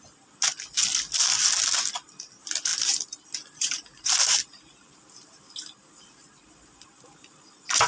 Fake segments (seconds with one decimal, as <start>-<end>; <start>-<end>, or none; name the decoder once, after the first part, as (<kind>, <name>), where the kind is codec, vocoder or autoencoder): 2.7-7.4 (vocoder, BigVGAN v2)